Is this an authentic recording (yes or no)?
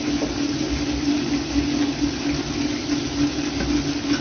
yes